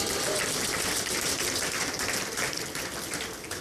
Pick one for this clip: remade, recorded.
recorded